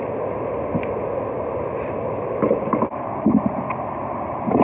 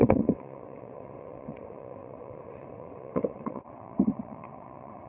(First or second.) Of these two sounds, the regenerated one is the second